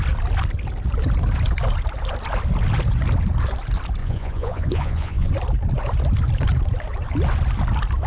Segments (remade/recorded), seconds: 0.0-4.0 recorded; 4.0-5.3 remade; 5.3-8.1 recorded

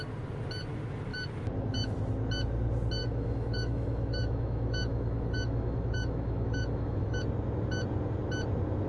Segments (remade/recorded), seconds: 0.0-3.0 recorded; 3.0-7.2 remade; 7.2-8.9 recorded

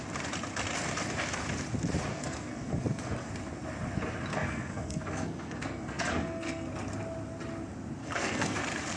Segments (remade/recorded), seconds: 0.0-2.1 recorded; 2.1-3.3 remade; 3.3-4.3 recorded; 4.3-6.7 remade; 6.7-8.0 recorded; 8.0-8.6 remade; 8.6-9.0 recorded

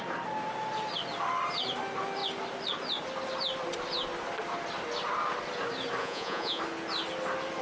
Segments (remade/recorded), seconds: 0.0-6.0 recorded; 6.0-6.6 remade; 6.6-7.6 recorded

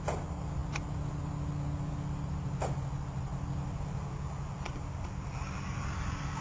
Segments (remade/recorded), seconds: 0.0-6.4 recorded

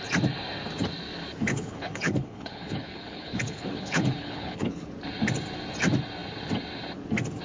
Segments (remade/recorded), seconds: 0.0-1.5 recorded; 1.5-4.9 remade; 4.9-7.4 recorded

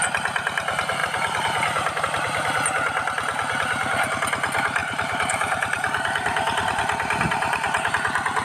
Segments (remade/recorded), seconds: 0.0-4.8 recorded; 4.8-7.9 remade; 7.9-8.4 recorded

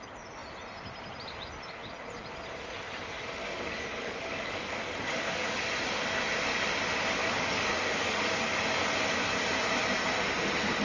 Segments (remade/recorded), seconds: 0.0-3.4 recorded; 3.4-5.7 remade; 5.7-7.2 recorded; 7.2-8.4 remade; 8.4-10.8 recorded